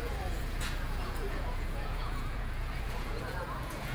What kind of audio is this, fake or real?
fake